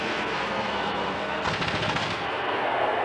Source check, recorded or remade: remade